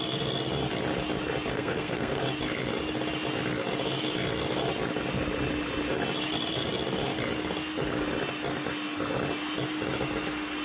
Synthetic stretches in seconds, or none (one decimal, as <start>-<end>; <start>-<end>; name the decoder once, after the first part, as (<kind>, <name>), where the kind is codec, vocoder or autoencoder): 1.5-2.2 (codec, SNAC)